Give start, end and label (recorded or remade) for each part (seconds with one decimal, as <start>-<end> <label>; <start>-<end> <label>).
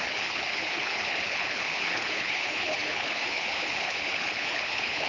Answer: 0.0-5.1 remade